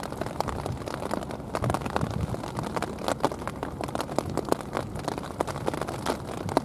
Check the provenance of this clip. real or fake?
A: real